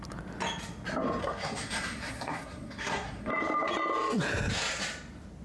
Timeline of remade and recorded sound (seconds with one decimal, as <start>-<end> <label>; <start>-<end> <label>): 0.0-1.2 recorded; 1.2-3.3 remade; 3.3-5.4 recorded